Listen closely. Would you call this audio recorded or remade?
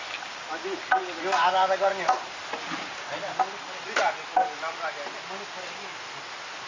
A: recorded